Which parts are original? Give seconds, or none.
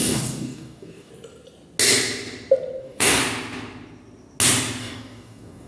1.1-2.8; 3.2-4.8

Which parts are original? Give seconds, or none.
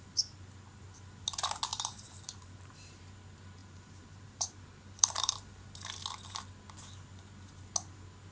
0.0-1.7; 3.0-3.6; 5.6-8.3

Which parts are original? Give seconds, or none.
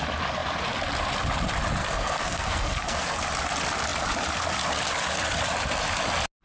0.0-1.8; 3.2-6.4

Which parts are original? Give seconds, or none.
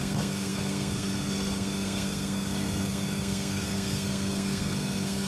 none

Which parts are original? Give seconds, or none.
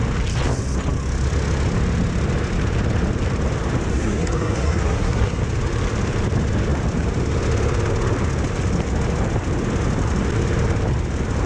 0.0-3.9; 5.4-11.5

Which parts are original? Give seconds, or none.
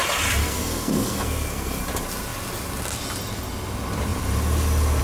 0.0-0.4; 1.8-5.0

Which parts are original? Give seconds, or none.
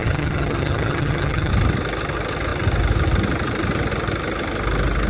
1.5-5.1